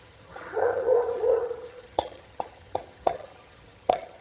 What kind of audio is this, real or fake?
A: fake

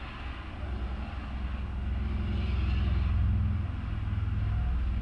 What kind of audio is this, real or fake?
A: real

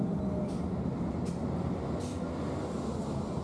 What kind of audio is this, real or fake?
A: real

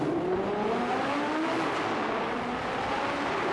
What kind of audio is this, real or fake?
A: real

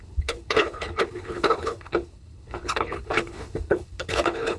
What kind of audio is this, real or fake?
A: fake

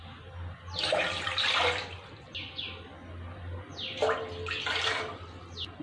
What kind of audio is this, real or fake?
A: real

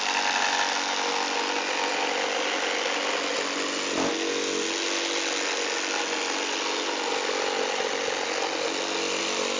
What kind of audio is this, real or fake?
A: real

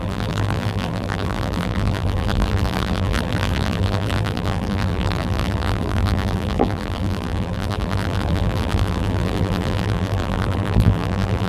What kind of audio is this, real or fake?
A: fake